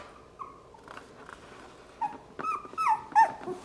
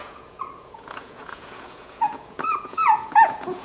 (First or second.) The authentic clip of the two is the first